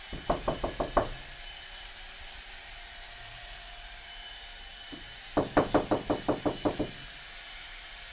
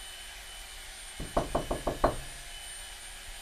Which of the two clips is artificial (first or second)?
first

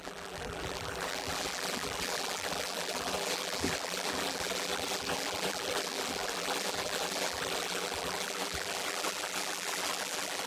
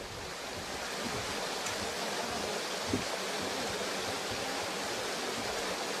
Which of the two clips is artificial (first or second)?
first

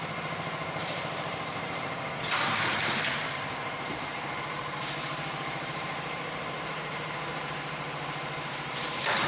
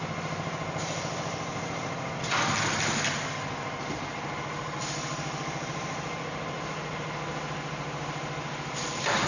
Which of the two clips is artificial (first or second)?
first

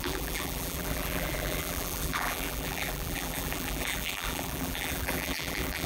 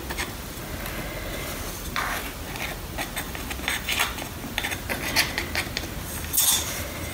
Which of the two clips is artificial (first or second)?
first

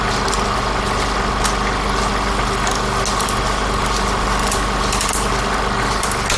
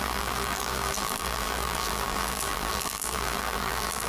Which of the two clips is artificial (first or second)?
second